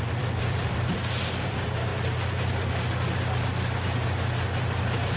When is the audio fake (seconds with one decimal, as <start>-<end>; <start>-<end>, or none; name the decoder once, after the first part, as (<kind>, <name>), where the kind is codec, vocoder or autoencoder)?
0.0-1.9 (vocoder, BigVGAN v2); 4.6-5.2